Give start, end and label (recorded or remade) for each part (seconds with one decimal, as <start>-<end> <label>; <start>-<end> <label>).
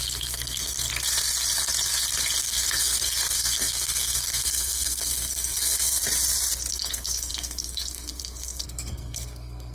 0.0-0.9 remade; 0.9-2.4 recorded; 2.4-6.0 remade; 6.0-6.7 recorded; 6.7-9.7 remade